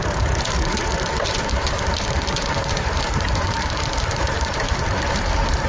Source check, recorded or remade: remade